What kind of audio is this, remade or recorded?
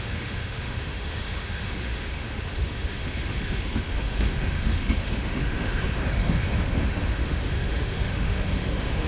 remade